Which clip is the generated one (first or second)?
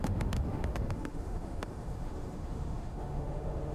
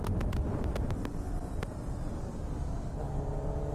first